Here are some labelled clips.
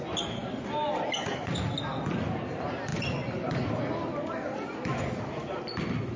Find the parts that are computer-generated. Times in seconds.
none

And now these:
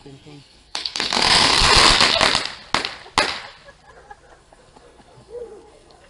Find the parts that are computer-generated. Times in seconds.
0.0-1.7 (codec, SNAC); 4.4-6.1

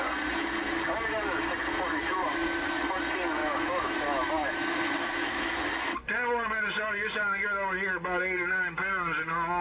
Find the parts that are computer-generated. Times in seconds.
2.2-2.8 (autoencoder, DAC-VAE); 3.4-5.7